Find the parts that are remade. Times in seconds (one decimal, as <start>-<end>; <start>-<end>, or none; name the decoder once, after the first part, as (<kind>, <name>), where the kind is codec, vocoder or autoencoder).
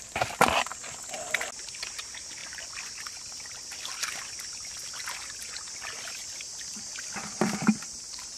none